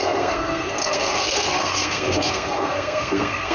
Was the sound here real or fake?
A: fake